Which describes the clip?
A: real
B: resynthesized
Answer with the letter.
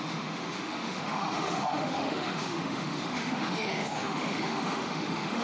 B